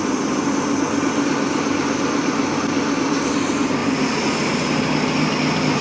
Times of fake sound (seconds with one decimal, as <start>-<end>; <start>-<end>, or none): none